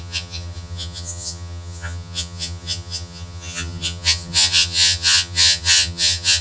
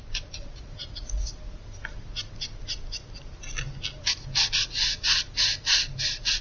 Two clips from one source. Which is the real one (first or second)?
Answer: second